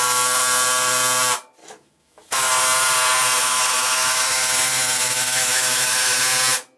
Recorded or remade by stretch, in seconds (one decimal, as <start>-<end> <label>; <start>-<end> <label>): 0.0-1.6 recorded; 1.6-2.5 remade; 2.5-3.4 recorded; 3.4-6.2 remade; 6.2-6.8 recorded